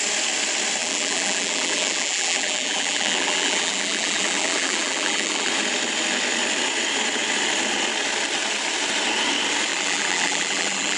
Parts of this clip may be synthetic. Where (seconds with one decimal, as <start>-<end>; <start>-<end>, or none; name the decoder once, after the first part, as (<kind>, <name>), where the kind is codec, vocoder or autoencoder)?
0.8-5.5 (vocoder, BigVGAN v2); 9.7-11.0